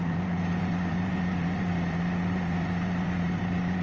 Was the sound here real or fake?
fake